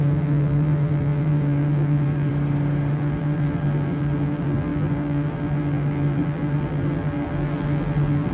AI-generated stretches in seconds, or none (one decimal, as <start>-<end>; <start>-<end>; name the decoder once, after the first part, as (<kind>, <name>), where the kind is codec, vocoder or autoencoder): 0.0-2.3 (vocoder, BigVGAN v2); 2.9-8.3